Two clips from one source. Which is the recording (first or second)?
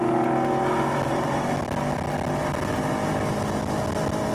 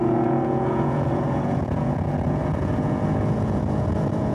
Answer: first